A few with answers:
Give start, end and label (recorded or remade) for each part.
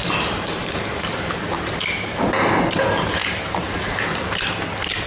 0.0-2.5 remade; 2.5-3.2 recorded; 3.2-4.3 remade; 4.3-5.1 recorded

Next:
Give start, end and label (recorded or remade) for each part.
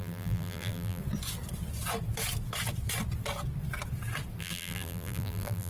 0.0-1.0 remade; 1.0-4.4 recorded; 4.4-5.7 remade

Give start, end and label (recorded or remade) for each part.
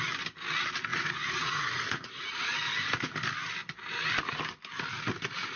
0.0-0.9 recorded; 0.9-2.4 remade; 2.4-5.6 recorded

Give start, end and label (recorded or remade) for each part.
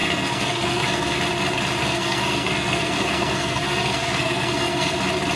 0.0-1.2 remade; 1.2-1.8 recorded; 1.8-5.0 remade; 5.0-5.4 recorded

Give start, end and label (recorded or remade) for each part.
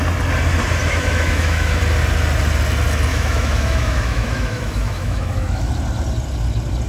0.0-0.9 recorded; 0.9-1.8 remade; 1.8-3.1 recorded; 3.1-5.7 remade; 5.7-6.9 recorded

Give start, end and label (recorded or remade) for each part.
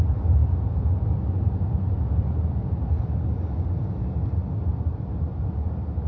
0.0-6.1 recorded